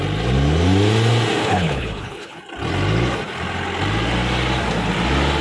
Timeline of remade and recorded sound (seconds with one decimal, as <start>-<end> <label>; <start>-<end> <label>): 0.0-1.4 recorded; 1.4-2.4 remade; 2.4-5.4 recorded